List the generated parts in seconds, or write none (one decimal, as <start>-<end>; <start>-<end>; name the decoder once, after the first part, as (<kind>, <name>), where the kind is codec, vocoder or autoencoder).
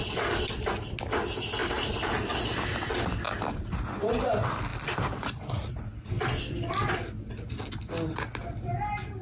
0.0-0.7 (vocoder, BigVGAN v2); 1.6-2.3; 4.7-6.7